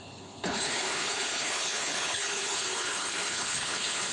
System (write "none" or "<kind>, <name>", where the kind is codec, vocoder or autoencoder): codec, HILCodec